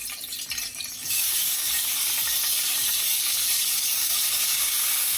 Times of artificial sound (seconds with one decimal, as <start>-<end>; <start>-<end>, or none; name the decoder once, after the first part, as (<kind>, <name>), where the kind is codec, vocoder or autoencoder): 0.9-5.2 (codec, DAC)